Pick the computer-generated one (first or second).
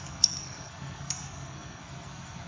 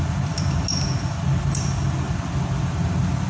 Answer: first